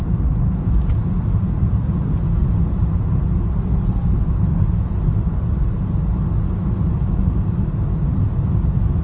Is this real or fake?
real